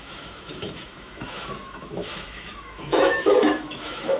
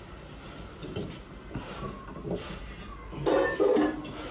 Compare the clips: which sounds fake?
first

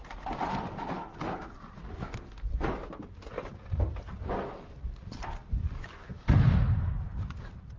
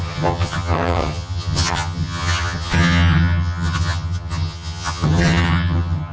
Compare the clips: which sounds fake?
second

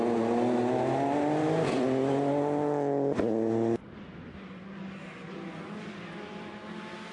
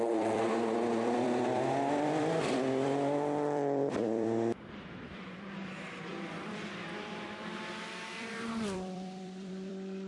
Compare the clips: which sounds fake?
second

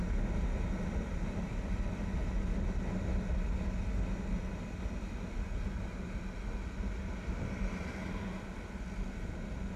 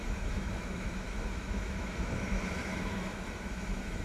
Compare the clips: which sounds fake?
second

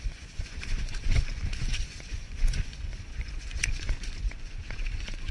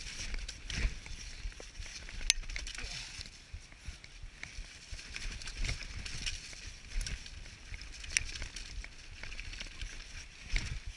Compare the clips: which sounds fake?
first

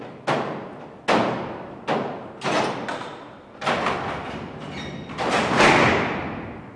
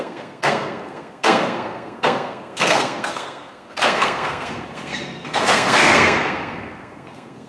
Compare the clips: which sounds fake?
second